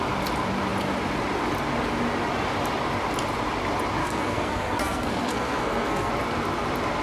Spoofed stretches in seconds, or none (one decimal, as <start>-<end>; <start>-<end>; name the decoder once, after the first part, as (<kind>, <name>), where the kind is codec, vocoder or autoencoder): 4.0-6.1 (codec, SNAC)